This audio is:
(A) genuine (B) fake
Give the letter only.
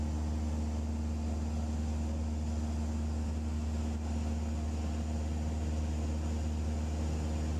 A